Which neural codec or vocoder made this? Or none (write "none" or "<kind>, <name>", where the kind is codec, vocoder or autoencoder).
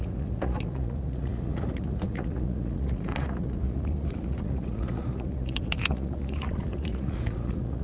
vocoder, Vocos